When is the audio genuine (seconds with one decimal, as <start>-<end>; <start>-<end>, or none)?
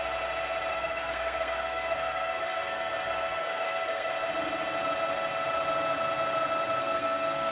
0.0-0.7; 4.1-6.8